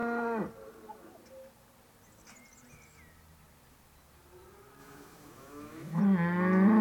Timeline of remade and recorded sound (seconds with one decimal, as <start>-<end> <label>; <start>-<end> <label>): 0.0-4.8 recorded; 4.8-6.0 remade; 6.0-6.8 recorded